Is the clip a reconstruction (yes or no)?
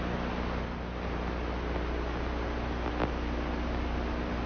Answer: no